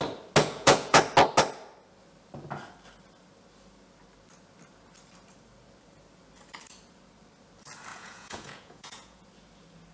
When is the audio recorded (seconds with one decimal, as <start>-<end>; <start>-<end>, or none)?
0.0-0.4; 1.0-7.9; 9.2-9.9